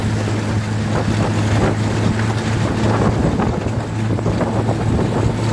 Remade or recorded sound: recorded